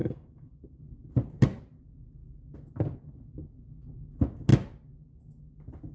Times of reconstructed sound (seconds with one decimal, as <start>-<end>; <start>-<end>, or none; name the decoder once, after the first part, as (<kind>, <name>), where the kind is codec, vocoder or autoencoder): 0.0-0.8 (codec, SNAC)